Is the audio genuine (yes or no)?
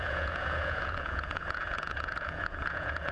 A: no